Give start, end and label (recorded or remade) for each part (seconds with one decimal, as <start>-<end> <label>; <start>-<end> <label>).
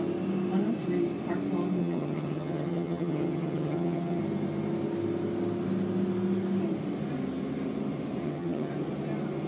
0.0-1.8 recorded; 1.8-4.2 remade; 4.2-8.2 recorded; 8.2-8.7 remade; 8.7-9.5 recorded